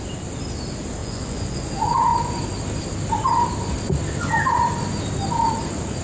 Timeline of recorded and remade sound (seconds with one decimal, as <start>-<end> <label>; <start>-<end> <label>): 0.0-1.0 recorded; 1.0-1.7 remade; 1.7-6.0 recorded